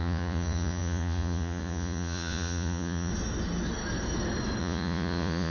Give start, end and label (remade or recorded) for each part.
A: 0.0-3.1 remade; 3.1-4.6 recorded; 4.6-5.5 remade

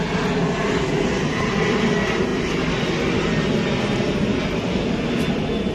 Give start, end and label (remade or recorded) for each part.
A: 0.0-5.7 recorded

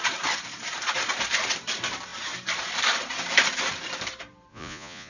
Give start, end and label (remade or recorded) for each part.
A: 0.0-4.5 recorded; 4.5-5.1 remade

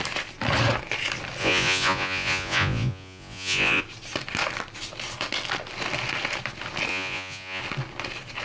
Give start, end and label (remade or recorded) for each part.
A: 0.0-1.4 recorded; 1.4-3.8 remade; 3.8-6.9 recorded; 6.9-7.6 remade; 7.6-8.4 recorded

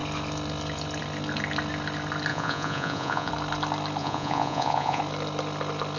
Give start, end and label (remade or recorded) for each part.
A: 0.0-2.3 recorded; 2.3-3.3 remade; 3.3-4.0 recorded; 4.0-5.0 remade; 5.0-6.0 recorded

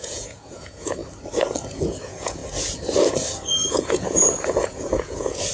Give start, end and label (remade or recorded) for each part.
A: 0.0-1.0 remade; 1.0-1.7 recorded; 1.7-2.4 remade; 2.4-3.7 recorded; 3.7-5.5 remade